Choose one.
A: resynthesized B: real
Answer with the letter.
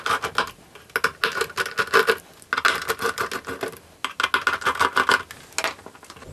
B